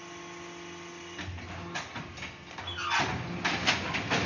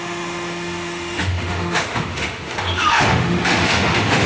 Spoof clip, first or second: second